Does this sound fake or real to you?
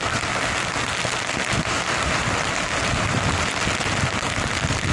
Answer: real